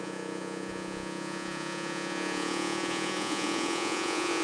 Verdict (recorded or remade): remade